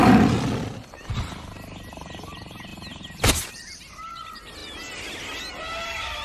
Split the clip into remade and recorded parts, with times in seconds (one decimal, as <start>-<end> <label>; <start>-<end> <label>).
0.0-6.2 recorded